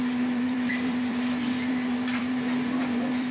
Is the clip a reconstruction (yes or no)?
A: yes